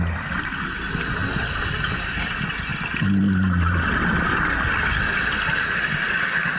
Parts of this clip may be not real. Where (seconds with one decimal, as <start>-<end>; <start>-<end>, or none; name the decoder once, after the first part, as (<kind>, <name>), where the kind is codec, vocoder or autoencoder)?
none